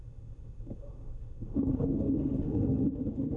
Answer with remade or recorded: remade